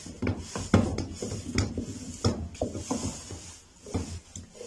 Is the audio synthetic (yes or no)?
no